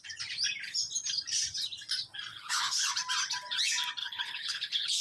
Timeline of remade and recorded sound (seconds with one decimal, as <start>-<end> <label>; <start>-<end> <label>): 0.0-2.3 recorded; 2.3-2.9 remade; 2.9-4.0 recorded; 4.0-5.0 remade